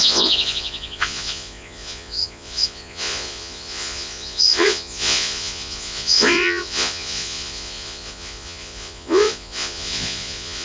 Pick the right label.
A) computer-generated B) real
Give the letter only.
A